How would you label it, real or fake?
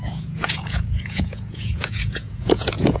fake